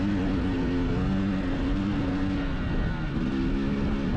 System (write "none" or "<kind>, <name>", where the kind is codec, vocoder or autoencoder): none